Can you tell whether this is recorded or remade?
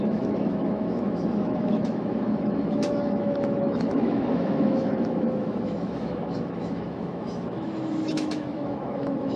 remade